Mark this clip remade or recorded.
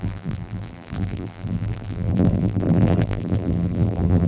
remade